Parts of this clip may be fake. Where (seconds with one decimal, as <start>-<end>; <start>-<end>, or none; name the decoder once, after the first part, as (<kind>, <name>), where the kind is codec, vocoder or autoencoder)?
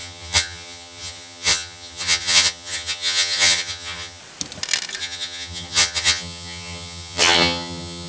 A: 0.0-4.2 (vocoder, HiFi-GAN); 5.0-8.1